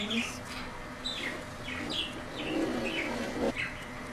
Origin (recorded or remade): recorded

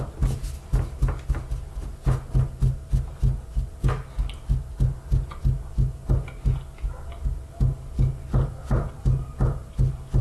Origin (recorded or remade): recorded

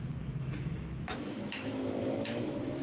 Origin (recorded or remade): remade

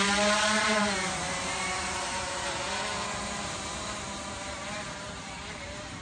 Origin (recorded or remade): remade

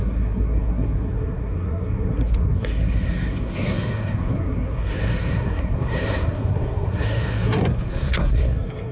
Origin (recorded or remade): remade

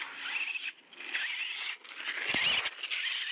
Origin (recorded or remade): recorded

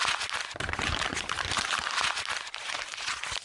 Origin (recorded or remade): recorded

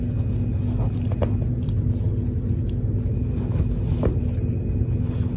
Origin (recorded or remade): recorded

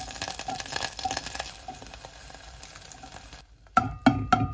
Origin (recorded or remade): recorded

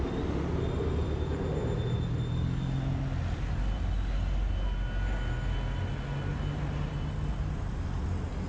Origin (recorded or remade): recorded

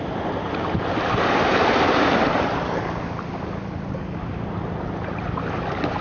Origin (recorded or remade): recorded